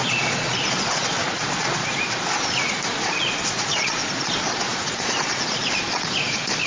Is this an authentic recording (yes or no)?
no